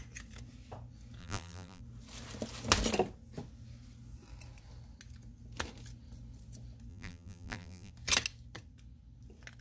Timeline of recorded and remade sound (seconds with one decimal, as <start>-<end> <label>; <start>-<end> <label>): 0.0-1.2 recorded; 1.2-1.8 remade; 1.8-6.9 recorded; 6.9-7.9 remade; 7.9-9.6 recorded